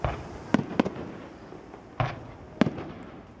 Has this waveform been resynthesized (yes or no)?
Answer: no